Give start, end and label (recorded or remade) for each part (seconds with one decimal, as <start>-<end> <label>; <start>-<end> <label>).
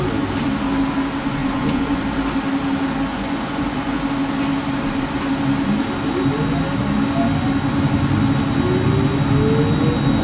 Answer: 0.0-1.4 recorded; 1.4-2.0 remade; 2.0-3.1 recorded; 3.1-4.0 remade; 4.0-10.2 recorded